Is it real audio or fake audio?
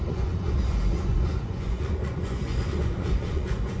fake